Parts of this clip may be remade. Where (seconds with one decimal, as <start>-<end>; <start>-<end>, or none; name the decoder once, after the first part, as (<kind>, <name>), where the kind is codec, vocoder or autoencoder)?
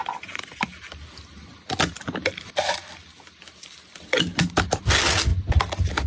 none